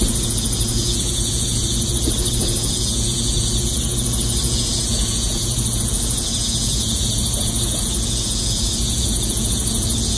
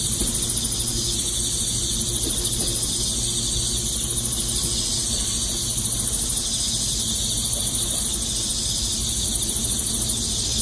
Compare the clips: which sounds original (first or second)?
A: second